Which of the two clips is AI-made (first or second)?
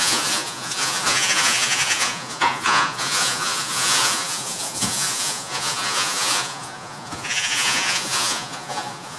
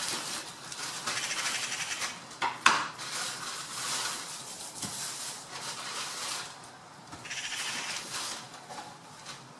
first